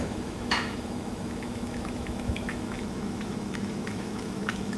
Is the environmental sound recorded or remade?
remade